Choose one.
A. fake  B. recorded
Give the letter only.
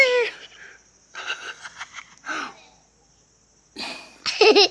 B